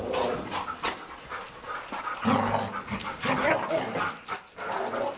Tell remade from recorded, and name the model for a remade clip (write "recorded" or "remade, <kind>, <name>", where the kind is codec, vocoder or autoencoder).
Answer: recorded